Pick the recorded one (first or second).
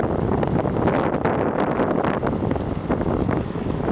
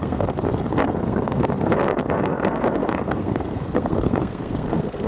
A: first